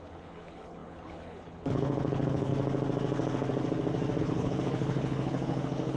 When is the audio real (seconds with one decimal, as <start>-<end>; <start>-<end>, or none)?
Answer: 2.5-4.2